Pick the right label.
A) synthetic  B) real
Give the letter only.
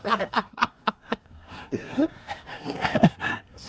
A